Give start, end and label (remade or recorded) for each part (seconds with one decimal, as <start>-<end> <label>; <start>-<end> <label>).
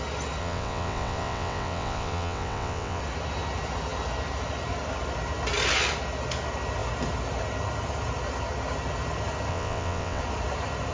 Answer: 0.0-0.4 recorded; 0.4-3.0 remade; 3.0-9.5 recorded; 9.5-10.2 remade; 10.2-10.9 recorded